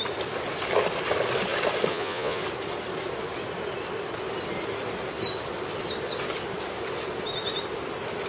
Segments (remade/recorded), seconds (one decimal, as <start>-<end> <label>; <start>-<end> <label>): 0.0-1.9 recorded; 1.9-2.4 remade; 2.4-8.3 recorded